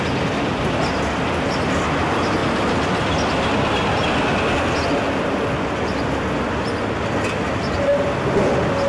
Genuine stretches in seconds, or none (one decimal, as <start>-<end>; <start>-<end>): 0.0-8.9